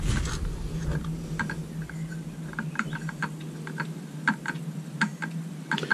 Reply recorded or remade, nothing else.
recorded